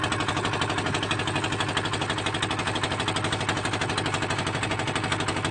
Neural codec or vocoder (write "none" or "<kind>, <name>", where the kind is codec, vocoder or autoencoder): none